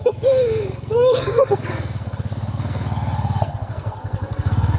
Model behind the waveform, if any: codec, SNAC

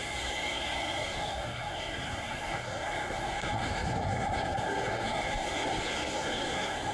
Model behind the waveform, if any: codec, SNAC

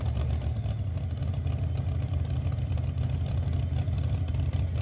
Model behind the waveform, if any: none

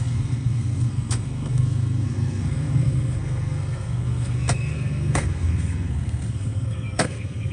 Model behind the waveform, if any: codec, SNAC